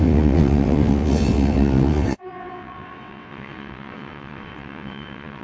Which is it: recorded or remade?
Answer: remade